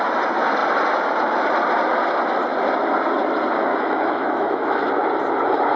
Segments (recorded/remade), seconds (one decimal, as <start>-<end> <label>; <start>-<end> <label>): 0.0-3.7 recorded; 3.7-4.9 remade; 4.9-5.8 recorded